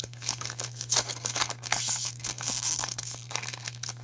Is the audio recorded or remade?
remade